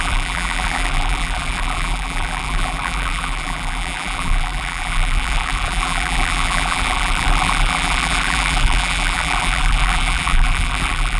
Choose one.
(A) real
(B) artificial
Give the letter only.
B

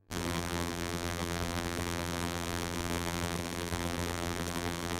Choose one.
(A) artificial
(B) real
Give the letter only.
A